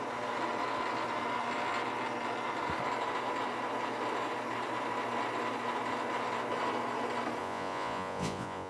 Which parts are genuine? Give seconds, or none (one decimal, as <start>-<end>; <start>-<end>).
0.0-7.4